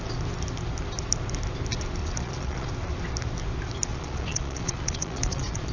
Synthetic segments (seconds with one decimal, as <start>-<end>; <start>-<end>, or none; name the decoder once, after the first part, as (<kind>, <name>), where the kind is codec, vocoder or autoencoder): 2.0-2.7 (vocoder, Vocos); 3.9-5.7